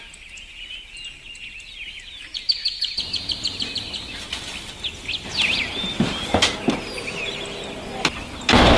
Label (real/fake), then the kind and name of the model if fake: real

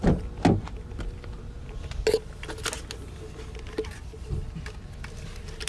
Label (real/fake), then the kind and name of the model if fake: real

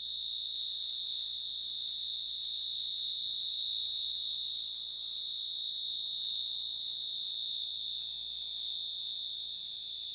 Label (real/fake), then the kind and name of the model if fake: fake, vocoder, Vocos